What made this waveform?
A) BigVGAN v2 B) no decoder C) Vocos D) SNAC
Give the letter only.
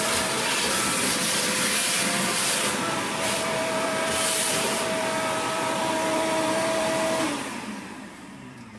A